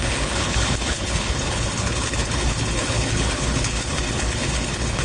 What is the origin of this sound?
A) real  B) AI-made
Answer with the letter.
B